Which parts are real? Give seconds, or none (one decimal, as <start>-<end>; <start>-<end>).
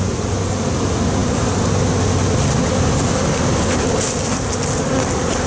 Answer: 0.0-5.5